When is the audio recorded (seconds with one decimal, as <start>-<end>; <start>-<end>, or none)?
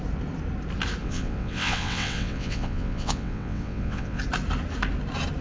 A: 0.0-1.0; 4.2-5.4